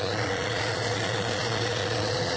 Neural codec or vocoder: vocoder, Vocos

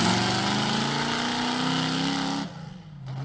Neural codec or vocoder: none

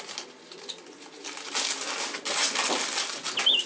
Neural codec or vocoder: none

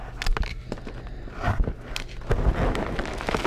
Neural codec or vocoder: none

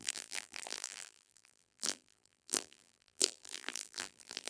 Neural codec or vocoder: vocoder, BigVGAN v2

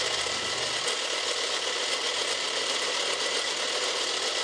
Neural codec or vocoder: none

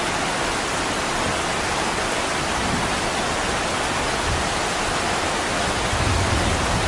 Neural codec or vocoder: none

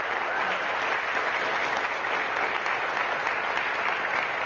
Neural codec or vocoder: none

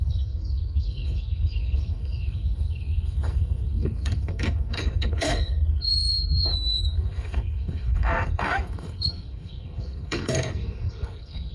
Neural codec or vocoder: codec, SNAC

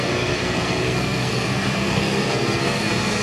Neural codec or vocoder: codec, SNAC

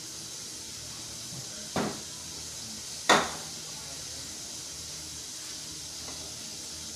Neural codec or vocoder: none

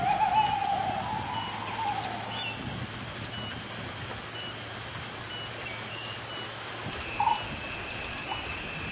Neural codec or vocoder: none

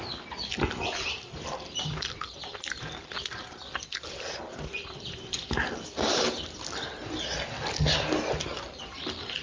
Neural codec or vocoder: none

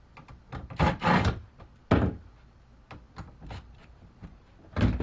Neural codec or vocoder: none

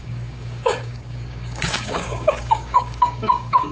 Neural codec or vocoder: codec, DAC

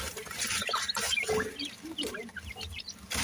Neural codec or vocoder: none